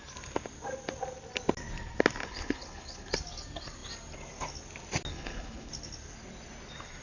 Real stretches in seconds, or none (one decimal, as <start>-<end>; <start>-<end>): 0.0-2.2; 3.1-5.1; 5.7-7.0

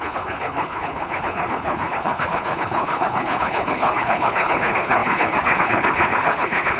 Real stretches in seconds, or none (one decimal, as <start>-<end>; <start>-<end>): none